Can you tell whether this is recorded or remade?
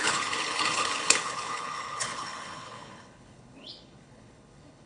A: remade